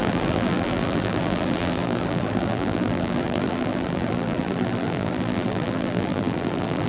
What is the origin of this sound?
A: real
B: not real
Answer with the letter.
B